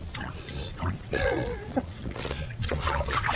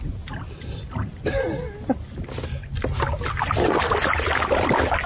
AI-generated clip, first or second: first